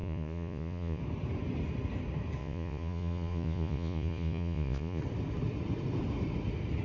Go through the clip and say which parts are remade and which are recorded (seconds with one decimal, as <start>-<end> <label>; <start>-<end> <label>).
0.0-1.0 remade; 1.0-2.4 recorded; 2.4-5.0 remade; 5.0-6.8 recorded